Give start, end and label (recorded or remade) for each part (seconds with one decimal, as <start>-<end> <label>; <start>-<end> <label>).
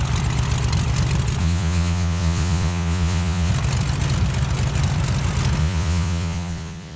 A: 0.0-1.4 recorded; 1.4-3.5 remade; 3.5-5.6 recorded; 5.6-7.0 remade